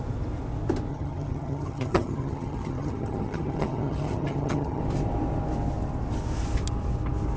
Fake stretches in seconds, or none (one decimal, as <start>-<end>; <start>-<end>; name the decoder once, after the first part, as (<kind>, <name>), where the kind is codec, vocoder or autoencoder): 0.9-4.8 (vocoder, HiFi-GAN)